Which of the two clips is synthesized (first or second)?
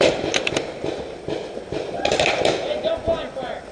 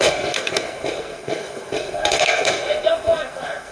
second